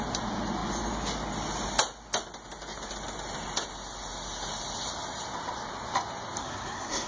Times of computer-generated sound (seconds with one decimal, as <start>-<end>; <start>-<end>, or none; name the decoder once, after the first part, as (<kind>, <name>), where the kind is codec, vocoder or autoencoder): 6.4-7.1 (codec, SNAC)